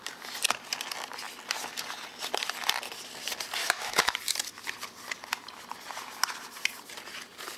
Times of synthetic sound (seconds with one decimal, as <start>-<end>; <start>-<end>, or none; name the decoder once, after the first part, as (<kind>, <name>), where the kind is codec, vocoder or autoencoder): 3.6-4.2 (autoencoder, DAC-VAE)